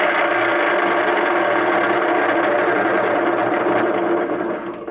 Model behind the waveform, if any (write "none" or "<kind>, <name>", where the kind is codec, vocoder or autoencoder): none